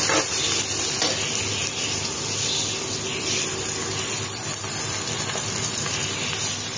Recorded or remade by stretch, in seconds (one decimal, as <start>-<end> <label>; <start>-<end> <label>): 0.0-6.8 recorded